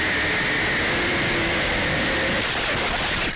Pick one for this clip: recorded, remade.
recorded